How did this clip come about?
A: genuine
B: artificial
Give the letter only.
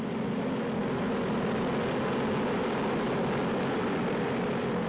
A